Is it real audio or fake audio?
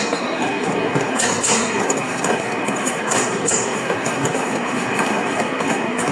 fake